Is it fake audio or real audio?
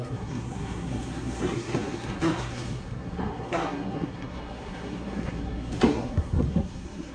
fake